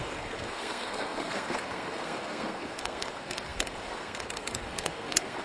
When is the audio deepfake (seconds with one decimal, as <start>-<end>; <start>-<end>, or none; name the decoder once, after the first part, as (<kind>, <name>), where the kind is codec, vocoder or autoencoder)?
0.0-5.4 (codec, SNAC)